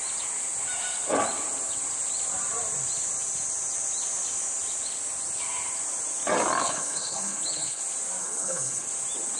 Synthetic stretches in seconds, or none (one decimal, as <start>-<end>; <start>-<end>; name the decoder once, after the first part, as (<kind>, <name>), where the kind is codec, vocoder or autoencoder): 6.6-7.8 (codec, HILCodec); 8.2-8.9